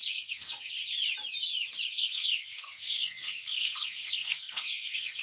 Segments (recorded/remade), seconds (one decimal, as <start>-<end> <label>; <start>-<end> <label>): 0.0-0.7 remade; 0.7-1.9 recorded; 1.9-5.2 remade